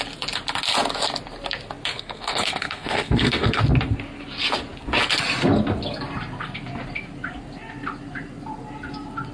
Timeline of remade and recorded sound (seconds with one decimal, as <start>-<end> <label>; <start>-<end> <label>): 0.0-1.9 recorded; 1.9-3.6 remade; 3.6-9.3 recorded